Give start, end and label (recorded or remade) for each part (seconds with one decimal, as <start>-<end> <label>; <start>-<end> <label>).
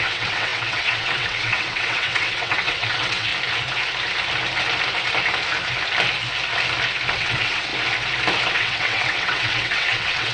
0.0-3.3 remade; 3.3-7.1 recorded; 7.1-7.7 remade; 7.7-8.5 recorded; 8.5-10.3 remade